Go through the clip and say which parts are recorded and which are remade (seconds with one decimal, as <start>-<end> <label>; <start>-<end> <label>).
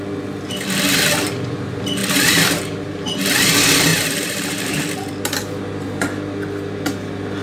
0.0-2.0 recorded; 2.0-3.2 remade; 3.2-3.9 recorded; 3.9-4.8 remade; 4.8-7.4 recorded